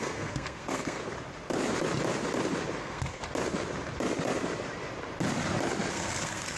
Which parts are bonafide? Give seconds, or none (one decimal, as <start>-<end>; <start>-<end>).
1.0-2.8; 3.2-5.9